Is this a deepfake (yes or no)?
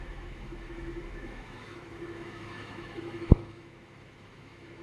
yes